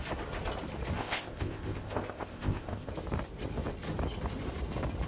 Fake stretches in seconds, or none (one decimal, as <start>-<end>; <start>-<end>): 1.0-2.9